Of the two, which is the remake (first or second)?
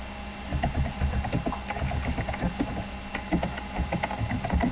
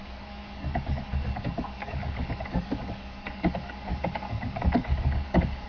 second